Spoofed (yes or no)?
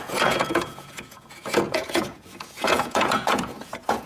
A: yes